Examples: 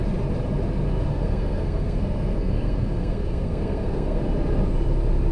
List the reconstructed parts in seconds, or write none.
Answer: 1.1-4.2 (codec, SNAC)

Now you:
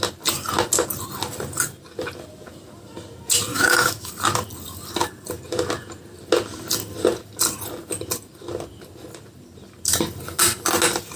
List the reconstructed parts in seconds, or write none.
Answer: 3.5-4.1 (autoencoder, DAC-VAE)

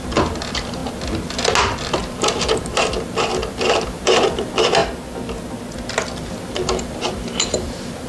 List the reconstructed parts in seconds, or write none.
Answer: 0.0-0.8 (vocoder, BigVGAN v2); 1.6-2.0; 2.6-4.8; 6.3-8.1

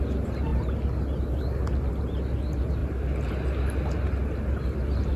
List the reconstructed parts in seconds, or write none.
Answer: none

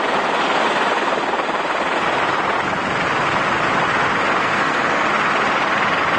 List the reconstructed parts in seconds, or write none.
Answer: 4.4-5.1 (codec, SNAC)

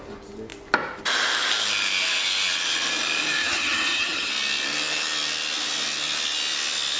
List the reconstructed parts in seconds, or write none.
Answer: 3.4-4.3 (vocoder, HiFi-GAN)

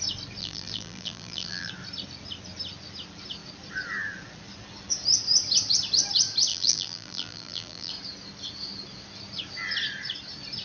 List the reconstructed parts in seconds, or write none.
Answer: 0.4-1.7 (vocoder, BigVGAN v2); 6.5-7.9